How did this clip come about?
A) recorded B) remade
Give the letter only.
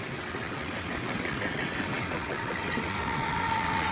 B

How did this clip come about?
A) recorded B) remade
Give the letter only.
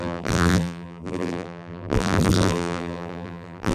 B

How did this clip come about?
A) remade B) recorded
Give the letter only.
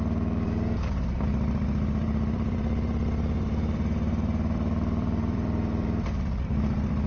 A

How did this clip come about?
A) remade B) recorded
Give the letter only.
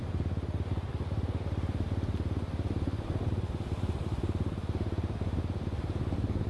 B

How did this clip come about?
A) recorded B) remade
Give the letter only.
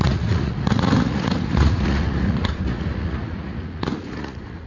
B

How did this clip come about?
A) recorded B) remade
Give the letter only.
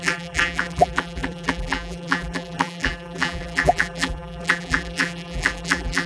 B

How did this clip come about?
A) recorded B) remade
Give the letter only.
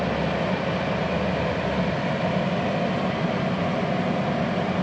A